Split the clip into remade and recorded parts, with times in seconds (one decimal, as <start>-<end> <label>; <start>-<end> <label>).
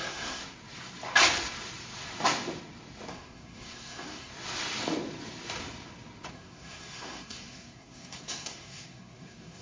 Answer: 0.0-0.4 remade; 0.4-3.1 recorded; 3.1-4.3 remade; 4.3-6.3 recorded; 6.3-9.6 remade